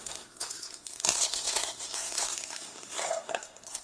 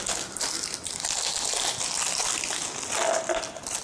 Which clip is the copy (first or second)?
first